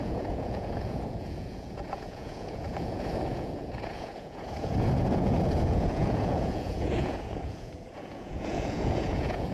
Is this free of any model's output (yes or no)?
no